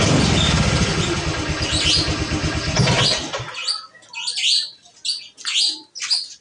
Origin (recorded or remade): recorded